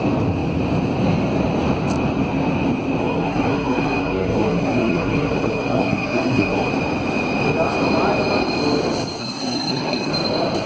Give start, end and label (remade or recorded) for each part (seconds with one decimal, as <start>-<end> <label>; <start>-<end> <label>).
0.0-3.0 recorded; 3.0-6.7 remade; 6.7-9.2 recorded; 9.2-10.1 remade; 10.1-10.7 recorded